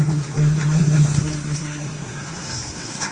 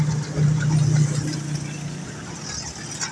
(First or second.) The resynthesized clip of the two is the first